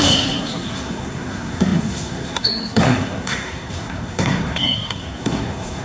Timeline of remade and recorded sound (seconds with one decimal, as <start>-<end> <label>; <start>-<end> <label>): 0.0-5.8 remade